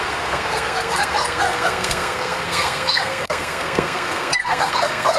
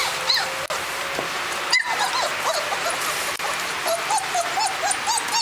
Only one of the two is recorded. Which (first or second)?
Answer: second